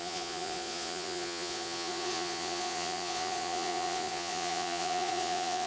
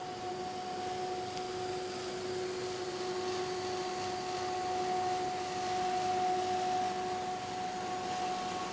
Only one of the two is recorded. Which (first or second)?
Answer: second